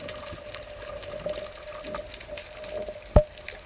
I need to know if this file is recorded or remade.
recorded